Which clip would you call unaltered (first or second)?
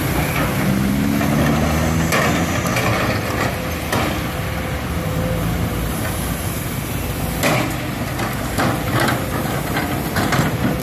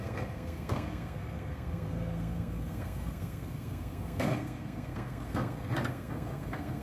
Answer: first